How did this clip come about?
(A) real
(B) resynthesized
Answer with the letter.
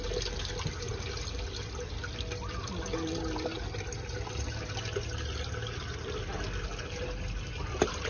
A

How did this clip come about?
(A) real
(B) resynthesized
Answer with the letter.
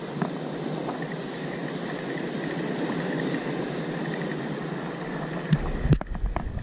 A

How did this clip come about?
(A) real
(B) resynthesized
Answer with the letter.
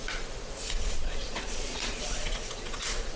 B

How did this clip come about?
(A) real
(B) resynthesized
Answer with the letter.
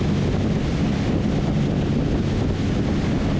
A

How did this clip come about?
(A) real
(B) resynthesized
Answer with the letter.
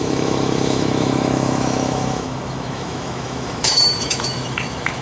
B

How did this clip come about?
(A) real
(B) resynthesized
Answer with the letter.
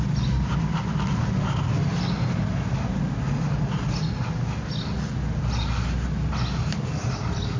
A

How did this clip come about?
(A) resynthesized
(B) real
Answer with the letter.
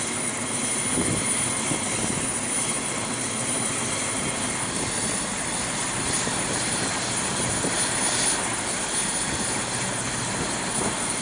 B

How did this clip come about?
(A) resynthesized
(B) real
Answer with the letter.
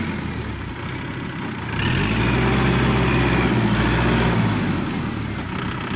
B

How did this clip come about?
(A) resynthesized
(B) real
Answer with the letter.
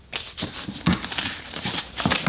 B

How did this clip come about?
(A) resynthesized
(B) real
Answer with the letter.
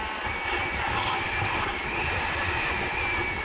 B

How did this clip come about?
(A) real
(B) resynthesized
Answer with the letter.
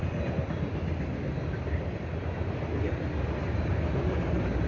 A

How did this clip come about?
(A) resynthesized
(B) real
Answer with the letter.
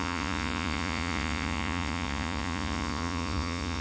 A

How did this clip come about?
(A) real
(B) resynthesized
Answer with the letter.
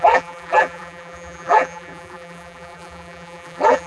B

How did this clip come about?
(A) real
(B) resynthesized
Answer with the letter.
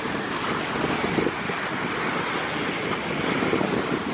A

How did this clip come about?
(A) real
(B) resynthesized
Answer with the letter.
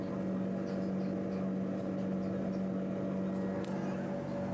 A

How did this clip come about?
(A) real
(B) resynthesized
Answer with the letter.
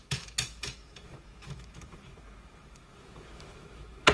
B